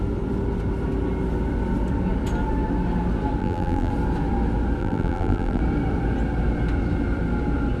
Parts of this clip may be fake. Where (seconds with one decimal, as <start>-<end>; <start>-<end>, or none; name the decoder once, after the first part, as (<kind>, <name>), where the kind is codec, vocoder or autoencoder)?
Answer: 3.4-3.9 (vocoder, BigVGAN v2); 4.8-5.6